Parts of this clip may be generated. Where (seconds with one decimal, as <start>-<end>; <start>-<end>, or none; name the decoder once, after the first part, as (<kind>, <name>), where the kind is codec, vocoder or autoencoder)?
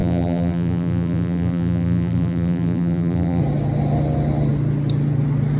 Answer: 0.0-3.4 (vocoder, BigVGAN v2)